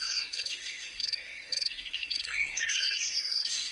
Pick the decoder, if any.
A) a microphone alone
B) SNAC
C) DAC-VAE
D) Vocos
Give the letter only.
B